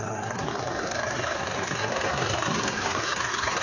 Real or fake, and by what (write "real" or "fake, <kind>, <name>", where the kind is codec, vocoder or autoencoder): fake, codec, SNAC